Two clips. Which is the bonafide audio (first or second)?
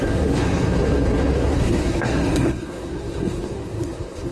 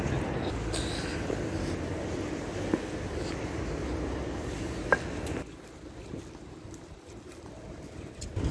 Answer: second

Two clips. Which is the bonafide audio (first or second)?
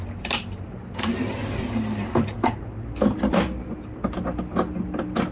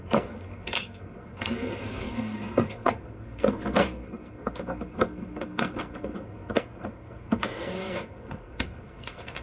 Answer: first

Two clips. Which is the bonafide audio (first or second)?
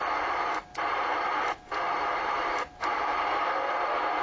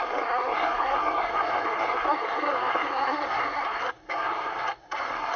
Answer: first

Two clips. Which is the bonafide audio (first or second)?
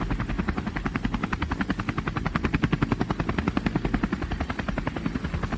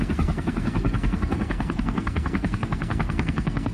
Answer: first